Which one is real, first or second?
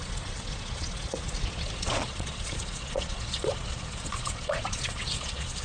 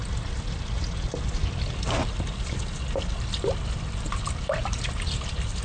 second